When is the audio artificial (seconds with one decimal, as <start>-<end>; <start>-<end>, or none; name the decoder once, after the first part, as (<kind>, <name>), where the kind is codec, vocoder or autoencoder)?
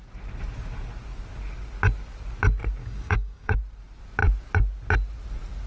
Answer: 2.8-3.6 (codec, DAC)